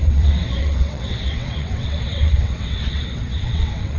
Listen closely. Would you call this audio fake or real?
fake